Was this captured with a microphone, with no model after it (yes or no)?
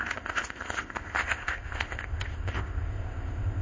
no